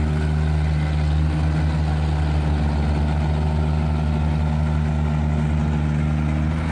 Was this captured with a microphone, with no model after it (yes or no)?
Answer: yes